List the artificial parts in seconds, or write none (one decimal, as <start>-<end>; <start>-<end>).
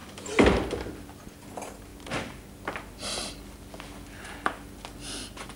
none